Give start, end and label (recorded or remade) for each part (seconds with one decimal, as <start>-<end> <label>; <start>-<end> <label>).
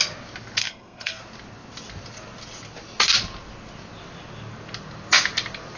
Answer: 0.0-0.6 recorded; 0.6-1.2 remade; 1.2-5.8 recorded